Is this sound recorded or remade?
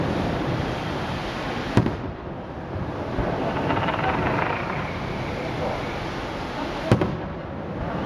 recorded